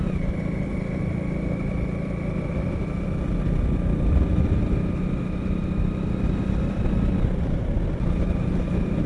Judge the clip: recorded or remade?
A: recorded